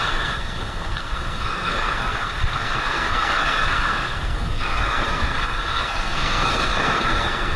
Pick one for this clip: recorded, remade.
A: remade